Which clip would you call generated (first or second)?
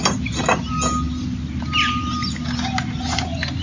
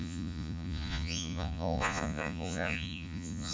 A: second